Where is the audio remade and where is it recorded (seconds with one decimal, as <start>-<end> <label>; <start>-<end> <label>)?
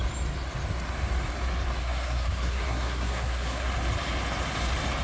0.0-1.8 recorded; 1.8-3.7 remade; 3.7-5.0 recorded